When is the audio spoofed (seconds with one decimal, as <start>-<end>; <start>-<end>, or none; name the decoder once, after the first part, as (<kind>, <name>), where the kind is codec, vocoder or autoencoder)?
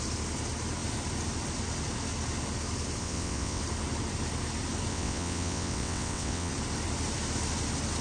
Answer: 3.0-3.6 (vocoder, WaveNeXt); 4.9-6.5